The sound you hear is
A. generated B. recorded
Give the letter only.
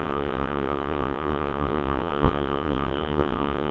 A